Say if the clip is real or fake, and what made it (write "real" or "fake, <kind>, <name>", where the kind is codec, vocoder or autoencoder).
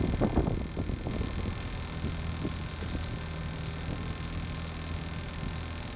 real